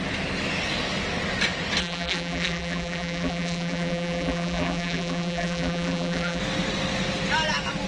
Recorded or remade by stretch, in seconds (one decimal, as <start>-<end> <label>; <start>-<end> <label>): 0.0-1.8 recorded; 1.8-6.4 remade; 6.4-7.9 recorded

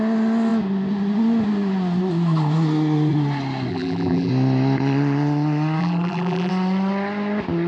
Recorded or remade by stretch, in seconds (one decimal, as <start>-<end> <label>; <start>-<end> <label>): 0.0-3.7 recorded; 3.7-4.3 remade; 4.3-5.8 recorded; 5.8-6.5 remade; 6.5-7.7 recorded

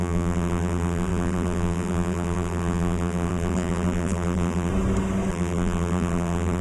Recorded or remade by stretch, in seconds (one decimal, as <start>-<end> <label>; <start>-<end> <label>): 0.0-4.7 remade; 4.7-5.3 recorded; 5.3-6.6 remade

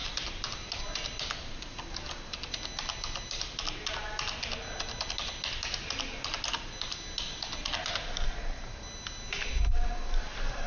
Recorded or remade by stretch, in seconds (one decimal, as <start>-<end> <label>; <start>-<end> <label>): 0.0-0.8 remade; 0.8-10.7 recorded